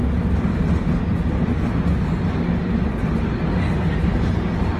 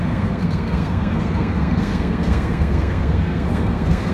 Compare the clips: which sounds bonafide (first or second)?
first